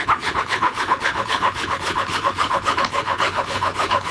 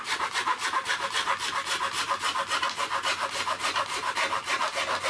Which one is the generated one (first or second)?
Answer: first